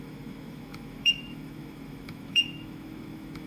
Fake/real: fake